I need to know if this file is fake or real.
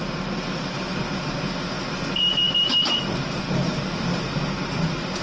real